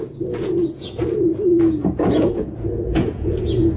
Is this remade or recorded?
remade